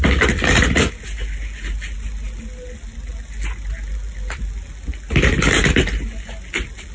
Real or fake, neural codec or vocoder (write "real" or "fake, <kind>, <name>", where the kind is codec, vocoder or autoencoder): real